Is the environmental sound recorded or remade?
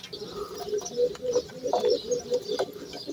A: recorded